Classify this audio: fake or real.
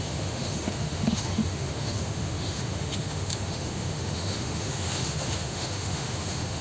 fake